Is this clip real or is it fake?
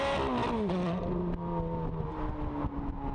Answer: real